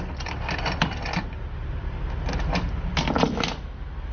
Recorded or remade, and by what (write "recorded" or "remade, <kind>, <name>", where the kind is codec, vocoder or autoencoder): recorded